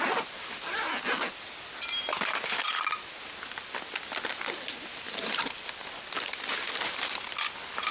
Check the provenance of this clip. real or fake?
real